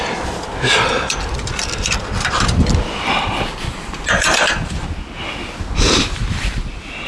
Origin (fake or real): real